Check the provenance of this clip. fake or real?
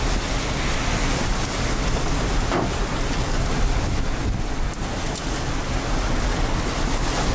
real